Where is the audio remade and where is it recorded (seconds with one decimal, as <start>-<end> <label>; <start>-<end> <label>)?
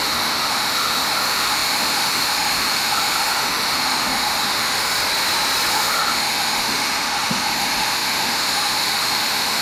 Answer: 0.0-5.0 remade; 5.0-5.7 recorded; 5.7-9.6 remade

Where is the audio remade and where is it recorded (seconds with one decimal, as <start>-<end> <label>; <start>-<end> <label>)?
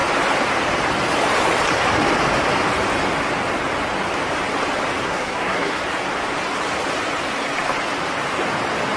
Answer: 0.0-5.0 recorded; 5.0-5.8 remade; 5.8-9.0 recorded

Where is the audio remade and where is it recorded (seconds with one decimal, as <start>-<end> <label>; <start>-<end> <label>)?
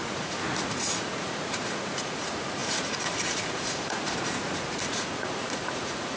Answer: 0.0-6.2 remade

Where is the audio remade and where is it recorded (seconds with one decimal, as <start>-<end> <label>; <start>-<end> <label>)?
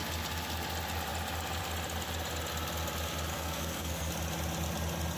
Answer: 0.0-3.3 recorded; 3.3-4.1 remade; 4.1-5.2 recorded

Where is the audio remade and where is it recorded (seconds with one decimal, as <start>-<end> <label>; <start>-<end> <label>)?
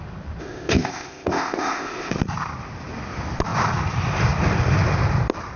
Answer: 0.0-0.4 recorded; 0.4-2.1 remade; 2.1-5.6 recorded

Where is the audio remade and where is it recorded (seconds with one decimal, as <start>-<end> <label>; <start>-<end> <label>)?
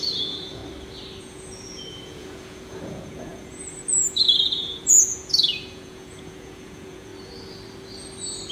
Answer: 0.0-0.6 remade; 0.6-1.2 recorded; 1.2-7.1 remade; 7.1-8.5 recorded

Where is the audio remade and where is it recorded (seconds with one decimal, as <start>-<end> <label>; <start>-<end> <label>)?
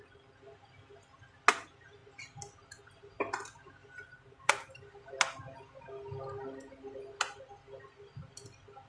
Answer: 0.0-3.8 recorded; 3.8-5.1 remade; 5.1-8.9 recorded